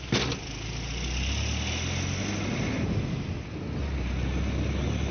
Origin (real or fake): real